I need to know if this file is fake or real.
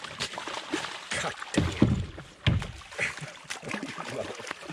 real